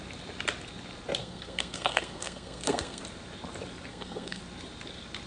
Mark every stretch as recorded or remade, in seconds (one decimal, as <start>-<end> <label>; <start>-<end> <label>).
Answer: 0.0-1.2 recorded; 1.2-3.0 remade; 3.0-3.9 recorded; 3.9-4.4 remade; 4.4-5.3 recorded